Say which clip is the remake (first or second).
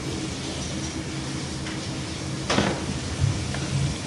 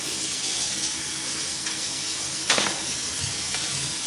second